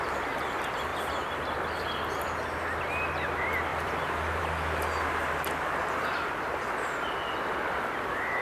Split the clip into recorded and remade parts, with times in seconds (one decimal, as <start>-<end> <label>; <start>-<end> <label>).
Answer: 0.0-3.7 recorded; 3.7-4.4 remade; 4.4-8.4 recorded

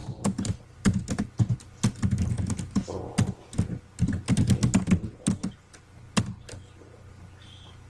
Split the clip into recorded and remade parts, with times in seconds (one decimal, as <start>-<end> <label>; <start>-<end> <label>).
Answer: 0.0-1.0 remade; 1.0-7.9 recorded

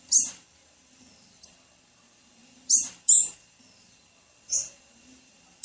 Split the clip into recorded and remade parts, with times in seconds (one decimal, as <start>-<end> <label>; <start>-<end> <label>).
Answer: 0.0-5.6 recorded

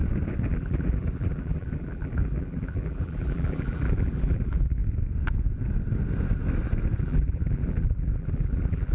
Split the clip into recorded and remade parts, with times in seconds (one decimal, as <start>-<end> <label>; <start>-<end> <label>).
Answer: 0.0-0.5 recorded; 0.5-4.8 remade; 4.8-7.0 recorded; 7.0-8.9 remade